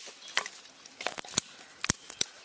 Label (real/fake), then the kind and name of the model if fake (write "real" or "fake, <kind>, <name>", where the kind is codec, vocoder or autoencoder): real